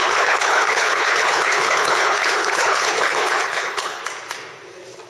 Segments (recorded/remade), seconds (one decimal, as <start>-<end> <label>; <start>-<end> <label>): 0.0-4.0 remade; 4.0-5.1 recorded